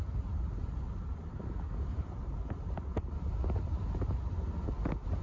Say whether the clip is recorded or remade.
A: recorded